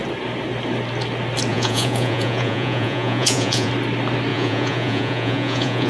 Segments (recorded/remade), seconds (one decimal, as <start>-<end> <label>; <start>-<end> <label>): 0.0-1.5 recorded; 1.5-3.7 remade; 3.7-4.3 recorded; 4.3-5.9 remade